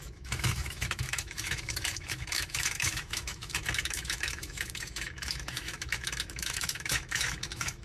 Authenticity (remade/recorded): remade